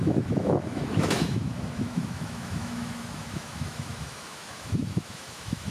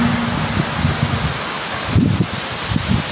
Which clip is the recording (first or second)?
second